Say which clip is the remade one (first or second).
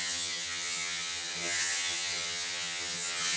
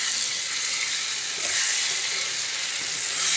first